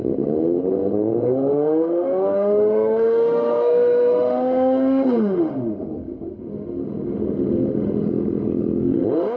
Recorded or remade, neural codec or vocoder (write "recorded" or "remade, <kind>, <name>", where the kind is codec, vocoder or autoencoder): remade, autoencoder, DAC-VAE